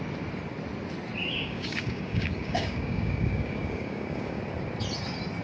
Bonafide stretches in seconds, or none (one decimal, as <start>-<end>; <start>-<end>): 0.0-1.2; 4.4-5.4